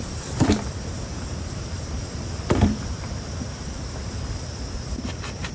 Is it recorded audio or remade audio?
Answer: remade